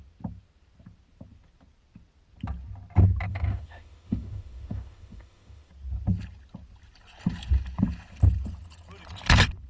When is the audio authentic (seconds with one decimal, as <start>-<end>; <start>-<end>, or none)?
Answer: 0.0-3.3; 5.7-9.7